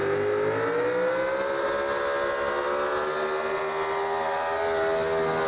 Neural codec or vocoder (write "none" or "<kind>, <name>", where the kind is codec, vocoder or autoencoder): none